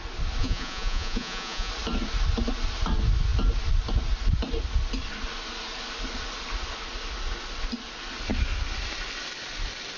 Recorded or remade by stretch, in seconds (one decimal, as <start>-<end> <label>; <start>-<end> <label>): 0.0-0.4 recorded; 0.4-1.7 remade; 1.7-10.0 recorded